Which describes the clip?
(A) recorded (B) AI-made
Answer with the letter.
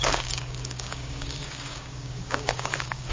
B